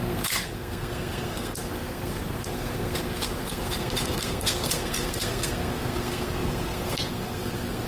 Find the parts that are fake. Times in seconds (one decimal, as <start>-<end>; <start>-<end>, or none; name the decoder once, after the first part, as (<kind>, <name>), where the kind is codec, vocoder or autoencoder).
0.0-7.9 (codec, SNAC)